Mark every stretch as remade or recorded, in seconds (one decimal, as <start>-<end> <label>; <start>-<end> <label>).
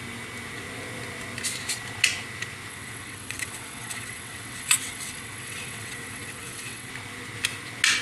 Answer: 0.0-2.7 recorded; 2.7-6.9 remade; 6.9-8.0 recorded